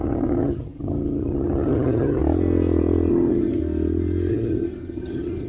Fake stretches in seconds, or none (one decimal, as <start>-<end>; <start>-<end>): 0.0-2.2; 3.1-3.6; 4.3-5.5